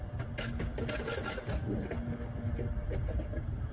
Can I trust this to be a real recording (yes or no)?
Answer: yes